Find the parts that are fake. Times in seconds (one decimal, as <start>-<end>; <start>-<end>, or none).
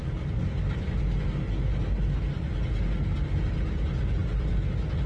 none